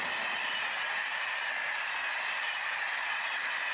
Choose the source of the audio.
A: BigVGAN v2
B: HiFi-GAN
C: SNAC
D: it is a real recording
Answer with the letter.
D